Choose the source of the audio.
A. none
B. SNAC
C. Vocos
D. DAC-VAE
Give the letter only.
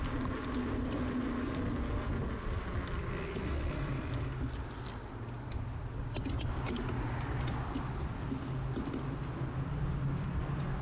A